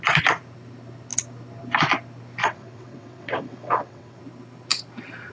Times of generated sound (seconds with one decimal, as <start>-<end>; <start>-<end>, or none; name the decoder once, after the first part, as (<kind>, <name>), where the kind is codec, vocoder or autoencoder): 2.4-4.2 (vocoder, WaveNeXt)